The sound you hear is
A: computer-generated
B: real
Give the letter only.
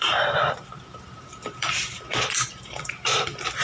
A